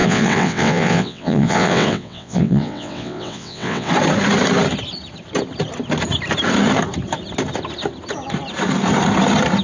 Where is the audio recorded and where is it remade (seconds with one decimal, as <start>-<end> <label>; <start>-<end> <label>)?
0.0-3.9 remade; 3.9-9.6 recorded